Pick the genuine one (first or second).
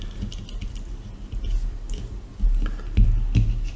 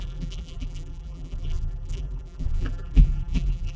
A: first